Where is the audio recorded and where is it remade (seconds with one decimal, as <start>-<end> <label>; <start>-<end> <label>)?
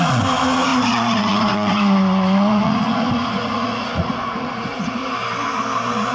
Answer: 0.0-5.0 remade; 5.0-6.1 recorded